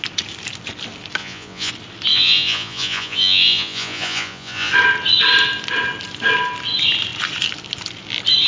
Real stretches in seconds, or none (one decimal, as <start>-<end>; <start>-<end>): 0.0-1.2; 1.7-2.1; 4.7-8.5

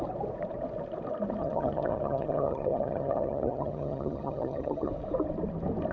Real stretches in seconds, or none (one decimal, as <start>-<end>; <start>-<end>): 0.0-1.4; 4.9-5.9

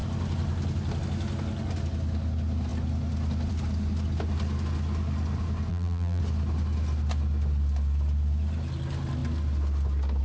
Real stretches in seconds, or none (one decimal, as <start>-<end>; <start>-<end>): 0.0-5.7; 6.2-10.2

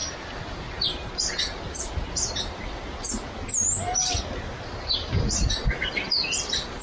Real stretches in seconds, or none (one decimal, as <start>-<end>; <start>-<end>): 1.1-6.8

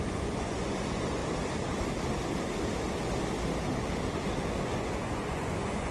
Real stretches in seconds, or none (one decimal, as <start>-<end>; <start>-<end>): 1.2-4.6